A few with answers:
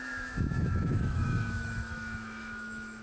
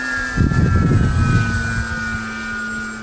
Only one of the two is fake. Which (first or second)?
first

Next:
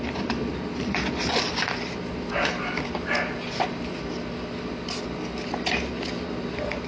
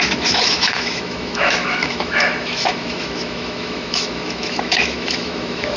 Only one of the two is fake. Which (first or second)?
second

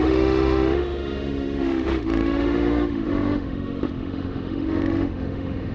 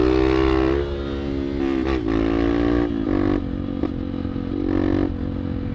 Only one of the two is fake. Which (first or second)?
first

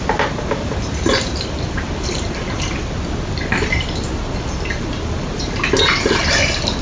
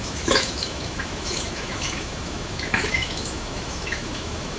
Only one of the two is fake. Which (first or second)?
second